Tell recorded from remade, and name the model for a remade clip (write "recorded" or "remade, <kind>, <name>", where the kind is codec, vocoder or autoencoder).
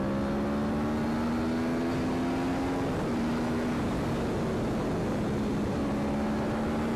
recorded